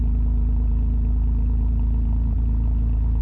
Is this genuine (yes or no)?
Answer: no